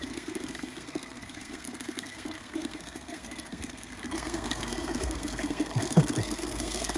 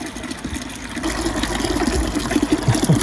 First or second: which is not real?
first